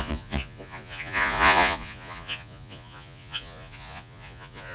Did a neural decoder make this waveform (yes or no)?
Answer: yes